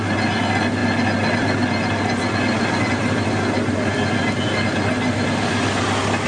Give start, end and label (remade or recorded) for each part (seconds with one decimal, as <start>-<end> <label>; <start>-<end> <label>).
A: 0.0-6.3 recorded